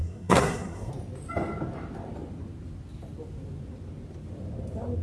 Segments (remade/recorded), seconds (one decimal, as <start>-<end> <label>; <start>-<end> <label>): 0.0-0.9 remade; 0.9-5.0 recorded